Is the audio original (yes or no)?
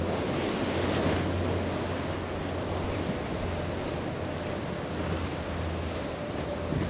yes